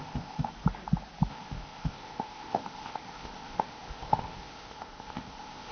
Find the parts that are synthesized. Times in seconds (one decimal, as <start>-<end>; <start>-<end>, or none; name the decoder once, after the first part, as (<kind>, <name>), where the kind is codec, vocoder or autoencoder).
0.0-0.5 (codec, ZipCodec); 1.3-5.7